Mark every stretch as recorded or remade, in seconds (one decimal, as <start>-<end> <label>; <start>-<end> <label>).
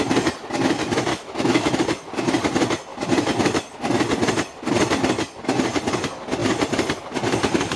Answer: 0.0-1.1 recorded; 1.1-1.7 remade; 1.7-7.8 recorded